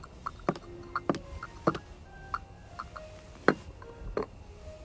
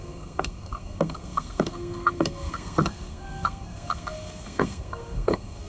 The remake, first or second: second